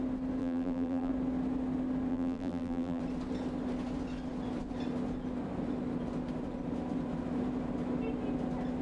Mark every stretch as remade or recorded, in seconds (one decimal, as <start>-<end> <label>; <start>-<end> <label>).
0.0-0.4 recorded; 0.4-1.1 remade; 1.1-2.1 recorded; 2.1-3.0 remade; 3.0-8.8 recorded